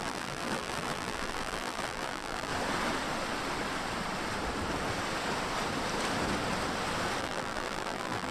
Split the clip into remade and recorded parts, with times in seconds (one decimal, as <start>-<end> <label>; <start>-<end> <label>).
0.0-2.5 remade; 2.5-7.2 recorded; 7.2-8.3 remade